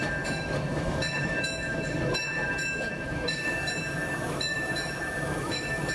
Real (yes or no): no